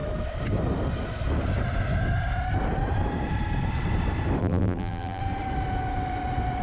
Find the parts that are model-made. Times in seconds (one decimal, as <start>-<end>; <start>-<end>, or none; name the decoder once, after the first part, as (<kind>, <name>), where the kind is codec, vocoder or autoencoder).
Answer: 4.4-5.2 (vocoder, BigVGAN v2)